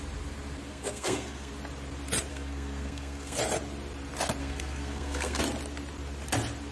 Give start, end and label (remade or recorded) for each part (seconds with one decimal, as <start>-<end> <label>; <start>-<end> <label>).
0.0-0.7 recorded; 0.7-1.5 remade; 1.5-2.3 recorded; 2.3-3.4 remade; 3.4-4.4 recorded; 4.4-5.4 remade; 5.4-6.7 recorded